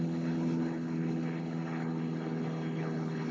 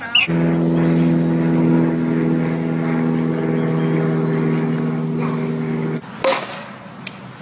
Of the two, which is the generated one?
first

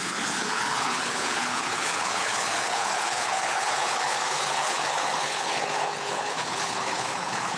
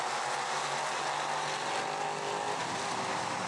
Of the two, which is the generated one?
first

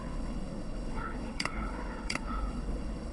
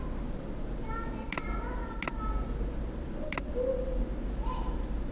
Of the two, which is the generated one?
first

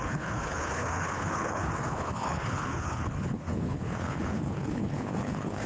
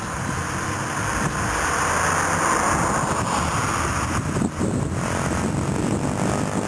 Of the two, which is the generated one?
first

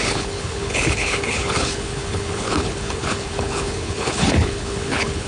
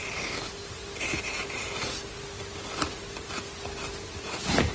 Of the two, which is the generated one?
first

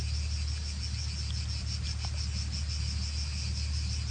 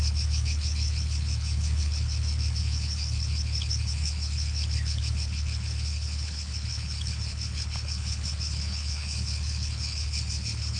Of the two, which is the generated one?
second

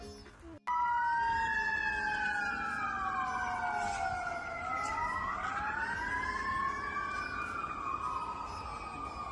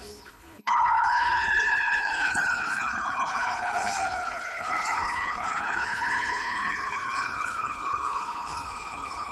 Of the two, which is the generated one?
second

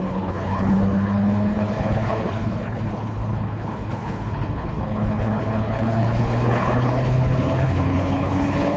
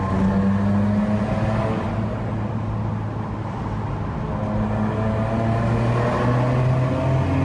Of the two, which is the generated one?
first